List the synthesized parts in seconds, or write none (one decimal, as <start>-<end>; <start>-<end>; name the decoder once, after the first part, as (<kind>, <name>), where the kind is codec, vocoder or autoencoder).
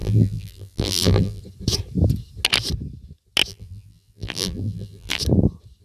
0.0-1.4 (vocoder, BigVGAN v2); 3.5-5.2